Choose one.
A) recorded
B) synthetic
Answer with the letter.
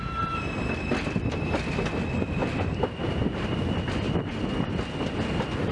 A